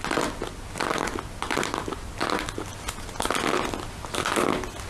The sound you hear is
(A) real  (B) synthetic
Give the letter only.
A